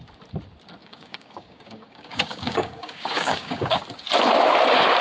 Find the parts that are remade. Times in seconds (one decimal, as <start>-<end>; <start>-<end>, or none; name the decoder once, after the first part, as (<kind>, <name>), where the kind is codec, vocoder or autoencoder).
0.8-3.8 (codec, DAC)